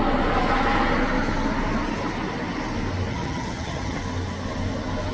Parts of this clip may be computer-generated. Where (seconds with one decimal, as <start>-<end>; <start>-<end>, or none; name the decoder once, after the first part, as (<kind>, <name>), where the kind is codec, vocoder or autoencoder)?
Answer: 3.1-4.0 (vocoder, HiFi-GAN)

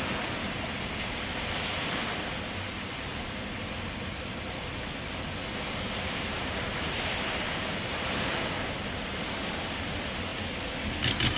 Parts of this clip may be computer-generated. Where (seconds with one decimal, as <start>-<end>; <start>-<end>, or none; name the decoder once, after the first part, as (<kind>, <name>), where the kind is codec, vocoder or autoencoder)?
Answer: none

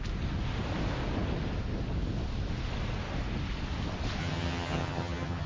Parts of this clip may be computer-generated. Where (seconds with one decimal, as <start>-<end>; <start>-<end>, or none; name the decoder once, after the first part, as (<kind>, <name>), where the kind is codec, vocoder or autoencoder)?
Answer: 4.2-5.5 (vocoder, HiFi-GAN)

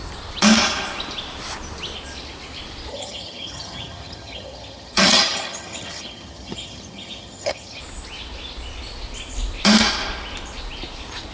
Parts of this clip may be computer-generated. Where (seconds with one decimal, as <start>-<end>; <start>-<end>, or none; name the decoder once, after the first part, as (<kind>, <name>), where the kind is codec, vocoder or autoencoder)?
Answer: 2.9-7.8 (vocoder, HiFi-GAN)